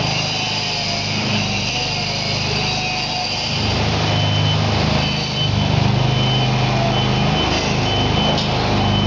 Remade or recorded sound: recorded